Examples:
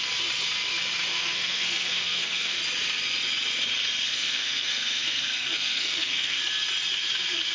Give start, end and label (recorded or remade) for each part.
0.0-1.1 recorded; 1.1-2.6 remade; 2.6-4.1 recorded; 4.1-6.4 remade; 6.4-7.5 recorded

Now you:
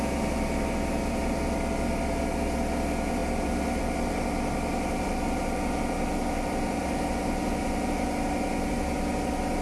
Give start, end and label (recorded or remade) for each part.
0.0-9.6 recorded

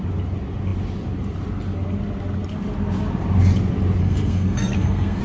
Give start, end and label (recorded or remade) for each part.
0.0-4.0 recorded; 4.0-5.2 remade

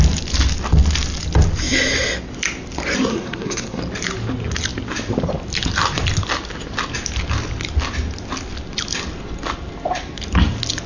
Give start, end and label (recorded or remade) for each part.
0.0-3.1 recorded; 3.1-3.8 remade; 3.8-10.9 recorded